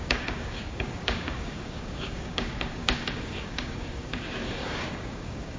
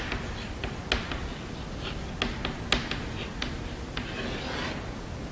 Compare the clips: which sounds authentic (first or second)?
second